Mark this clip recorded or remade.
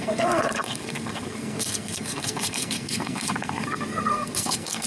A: remade